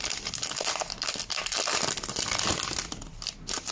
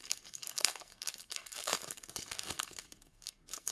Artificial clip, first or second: second